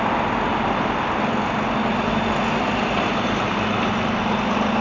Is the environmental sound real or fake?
real